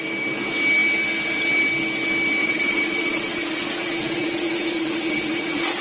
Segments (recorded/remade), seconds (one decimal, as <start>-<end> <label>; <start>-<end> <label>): 0.0-2.4 recorded; 2.4-5.8 remade